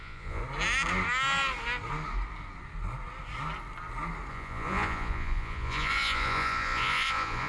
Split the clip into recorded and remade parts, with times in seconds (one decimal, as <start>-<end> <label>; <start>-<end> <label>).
0.0-0.4 remade; 0.4-4.3 recorded; 4.3-7.5 remade